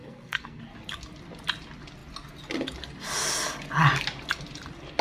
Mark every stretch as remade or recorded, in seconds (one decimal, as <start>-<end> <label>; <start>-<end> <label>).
0.0-0.6 remade; 0.6-5.0 recorded